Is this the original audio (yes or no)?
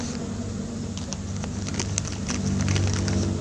yes